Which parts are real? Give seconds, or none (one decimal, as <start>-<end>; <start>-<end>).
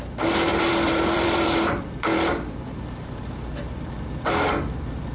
0.0-0.5; 3.6-5.1